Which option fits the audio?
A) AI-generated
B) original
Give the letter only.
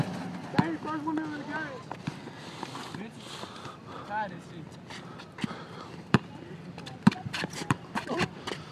A